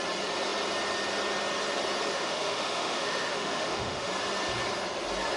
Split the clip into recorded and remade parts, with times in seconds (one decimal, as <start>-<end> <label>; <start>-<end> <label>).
0.0-2.1 recorded; 2.1-4.1 remade; 4.1-5.4 recorded